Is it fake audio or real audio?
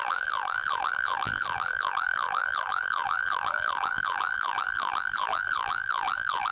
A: fake